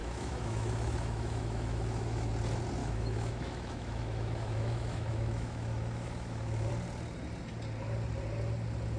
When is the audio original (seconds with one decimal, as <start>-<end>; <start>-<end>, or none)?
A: 2.3-2.8; 6.7-9.0